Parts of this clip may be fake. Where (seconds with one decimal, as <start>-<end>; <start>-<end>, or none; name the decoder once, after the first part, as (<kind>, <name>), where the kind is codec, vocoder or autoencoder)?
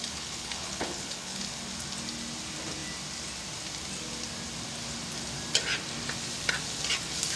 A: 0.0-1.5 (codec, HILCodec)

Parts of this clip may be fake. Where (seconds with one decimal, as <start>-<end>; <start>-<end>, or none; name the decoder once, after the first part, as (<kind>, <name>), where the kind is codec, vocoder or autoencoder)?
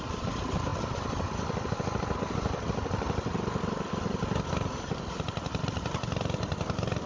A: none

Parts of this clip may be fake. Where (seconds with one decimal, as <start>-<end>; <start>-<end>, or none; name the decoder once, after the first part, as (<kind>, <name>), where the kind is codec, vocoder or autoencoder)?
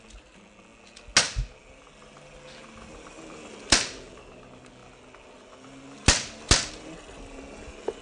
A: none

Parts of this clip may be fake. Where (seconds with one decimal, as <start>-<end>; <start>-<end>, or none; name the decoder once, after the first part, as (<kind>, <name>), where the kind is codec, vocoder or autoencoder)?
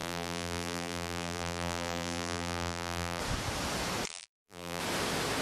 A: 0.0-3.2 (vocoder, BigVGAN v2); 4.1-4.8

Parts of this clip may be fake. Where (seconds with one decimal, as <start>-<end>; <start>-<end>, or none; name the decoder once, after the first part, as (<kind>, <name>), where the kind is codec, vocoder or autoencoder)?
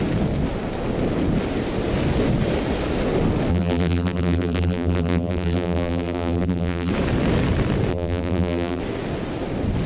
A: 3.5-6.9 (vocoder, BigVGAN v2); 7.9-8.8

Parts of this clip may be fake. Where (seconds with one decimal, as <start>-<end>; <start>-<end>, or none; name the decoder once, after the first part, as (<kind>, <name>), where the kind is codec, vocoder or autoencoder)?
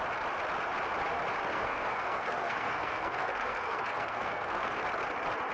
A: 1.5-4.8 (codec, SNAC)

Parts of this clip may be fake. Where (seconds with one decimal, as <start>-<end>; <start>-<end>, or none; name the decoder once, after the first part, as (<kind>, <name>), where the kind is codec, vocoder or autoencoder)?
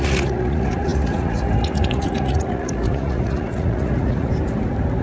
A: 0.0-4.3 (vocoder, Vocos)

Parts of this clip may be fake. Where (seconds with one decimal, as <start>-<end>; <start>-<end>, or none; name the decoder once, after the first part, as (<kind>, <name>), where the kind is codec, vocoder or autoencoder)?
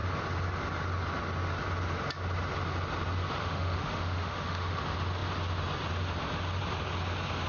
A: 3.4-4.8 (autoencoder, DAC-VAE)